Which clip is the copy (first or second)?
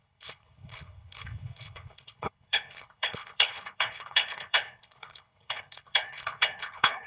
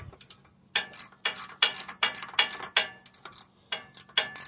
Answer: first